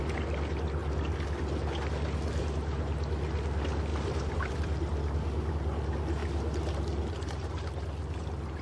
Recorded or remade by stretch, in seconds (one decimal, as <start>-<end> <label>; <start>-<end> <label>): 0.0-3.9 recorded; 3.9-5.5 remade; 5.5-8.6 recorded